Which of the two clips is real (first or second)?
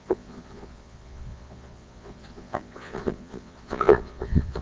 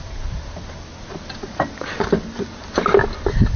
second